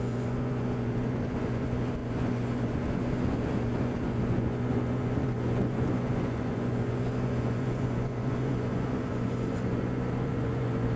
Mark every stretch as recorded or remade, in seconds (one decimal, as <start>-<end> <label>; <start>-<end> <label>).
0.0-11.0 remade